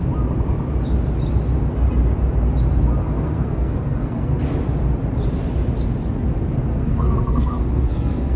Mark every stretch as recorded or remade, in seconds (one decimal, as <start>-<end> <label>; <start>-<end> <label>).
0.0-3.0 recorded; 3.0-4.4 remade; 4.4-6.7 recorded; 6.7-8.4 remade